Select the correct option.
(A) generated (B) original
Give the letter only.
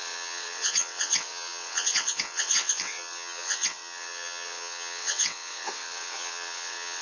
A